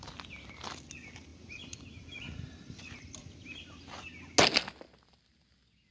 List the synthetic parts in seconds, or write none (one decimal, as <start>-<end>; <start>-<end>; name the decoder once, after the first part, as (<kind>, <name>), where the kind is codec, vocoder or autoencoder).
none